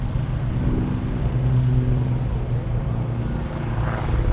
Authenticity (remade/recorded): recorded